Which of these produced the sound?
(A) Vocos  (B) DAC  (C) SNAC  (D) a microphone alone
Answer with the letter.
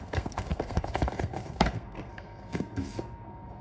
C